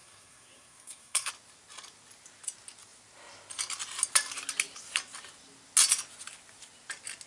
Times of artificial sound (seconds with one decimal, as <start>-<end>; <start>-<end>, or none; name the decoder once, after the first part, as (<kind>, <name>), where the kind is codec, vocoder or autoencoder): 0.0-1.3 (codec, SNAC)